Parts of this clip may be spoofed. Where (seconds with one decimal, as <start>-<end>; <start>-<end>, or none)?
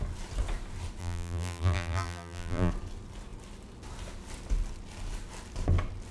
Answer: 1.0-2.7